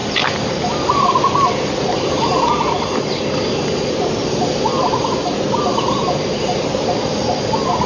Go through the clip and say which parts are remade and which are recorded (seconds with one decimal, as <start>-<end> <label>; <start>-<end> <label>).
0.0-7.9 recorded